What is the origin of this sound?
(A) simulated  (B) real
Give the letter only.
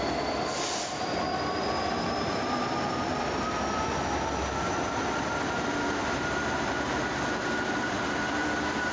A